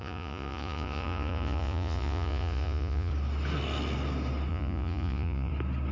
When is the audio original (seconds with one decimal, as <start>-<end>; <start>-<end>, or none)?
3.1-4.5; 5.5-5.9